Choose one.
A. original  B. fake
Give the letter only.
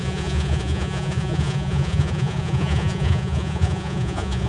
B